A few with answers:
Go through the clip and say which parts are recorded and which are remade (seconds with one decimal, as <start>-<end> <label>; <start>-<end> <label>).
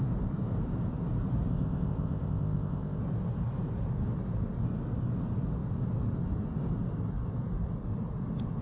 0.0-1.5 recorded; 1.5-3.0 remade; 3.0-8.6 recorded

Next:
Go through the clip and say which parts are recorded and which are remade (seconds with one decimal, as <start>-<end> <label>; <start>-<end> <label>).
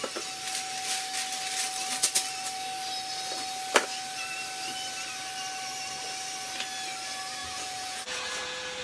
0.0-7.4 recorded; 7.4-8.8 remade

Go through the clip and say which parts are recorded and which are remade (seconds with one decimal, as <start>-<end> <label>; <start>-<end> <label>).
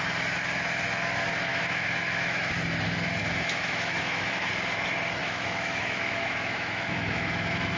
0.0-1.5 recorded; 1.5-2.5 remade; 2.5-3.2 recorded; 3.2-4.5 remade; 4.5-5.2 recorded; 5.2-7.8 remade